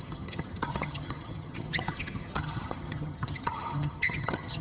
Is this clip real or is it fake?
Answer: fake